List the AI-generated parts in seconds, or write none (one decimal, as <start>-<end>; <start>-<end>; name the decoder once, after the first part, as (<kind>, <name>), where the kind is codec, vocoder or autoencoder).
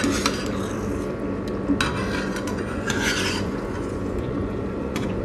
2.3-5.2 (vocoder, Vocos)